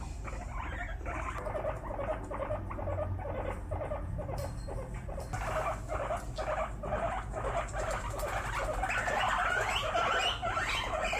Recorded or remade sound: recorded